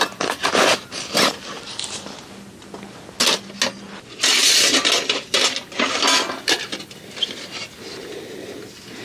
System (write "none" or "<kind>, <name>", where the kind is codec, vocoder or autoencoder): none